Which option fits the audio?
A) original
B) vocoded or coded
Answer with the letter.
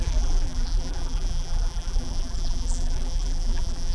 B